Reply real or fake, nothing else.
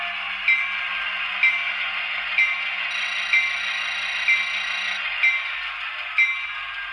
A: real